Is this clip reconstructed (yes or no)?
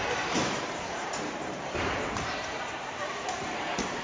yes